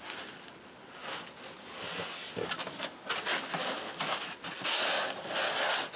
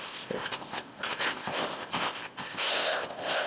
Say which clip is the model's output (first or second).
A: second